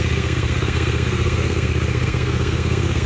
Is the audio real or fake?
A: fake